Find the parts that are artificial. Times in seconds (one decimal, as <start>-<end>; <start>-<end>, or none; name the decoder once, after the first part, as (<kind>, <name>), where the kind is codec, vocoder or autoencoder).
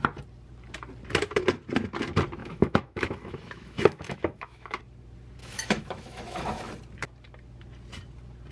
2.4-4.8 (autoencoder, DAC-VAE); 5.4-6.6